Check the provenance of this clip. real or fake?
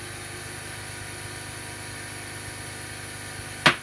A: real